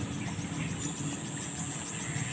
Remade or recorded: recorded